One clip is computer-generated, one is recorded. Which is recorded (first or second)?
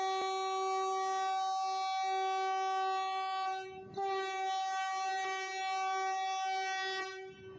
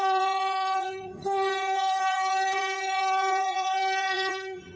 first